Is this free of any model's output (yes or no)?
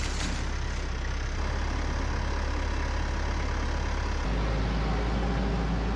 yes